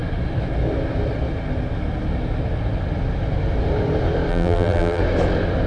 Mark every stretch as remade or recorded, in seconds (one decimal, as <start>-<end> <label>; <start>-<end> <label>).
0.0-4.3 recorded; 4.3-5.0 remade; 5.0-5.7 recorded